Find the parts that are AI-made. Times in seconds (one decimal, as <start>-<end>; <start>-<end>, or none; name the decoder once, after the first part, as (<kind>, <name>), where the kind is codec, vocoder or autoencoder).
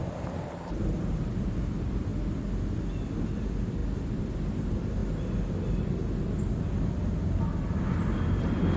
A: 0.0-2.1 (vocoder, BigVGAN v2); 3.2-5.0; 7.4-8.8